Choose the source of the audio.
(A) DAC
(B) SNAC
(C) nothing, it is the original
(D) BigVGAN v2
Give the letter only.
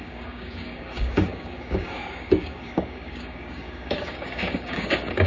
A